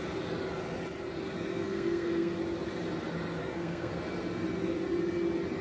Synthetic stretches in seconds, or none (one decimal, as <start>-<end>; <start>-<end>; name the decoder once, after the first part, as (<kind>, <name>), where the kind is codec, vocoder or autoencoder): 1.5-2.4 (codec, SNAC); 3.4-4.0